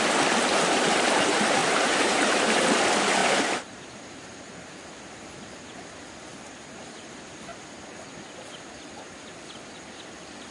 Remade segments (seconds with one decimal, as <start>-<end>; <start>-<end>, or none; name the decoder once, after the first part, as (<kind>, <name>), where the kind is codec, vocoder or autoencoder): 1.6-2.6 (vocoder, BigVGAN v2); 3.2-4.8